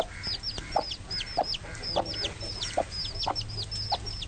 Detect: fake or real real